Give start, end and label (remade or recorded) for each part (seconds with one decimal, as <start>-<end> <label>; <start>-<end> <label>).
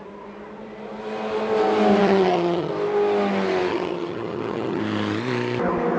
0.0-2.0 recorded; 2.0-2.7 remade; 2.7-3.7 recorded; 3.7-4.8 remade; 4.8-6.0 recorded